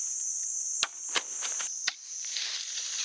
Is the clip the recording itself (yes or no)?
yes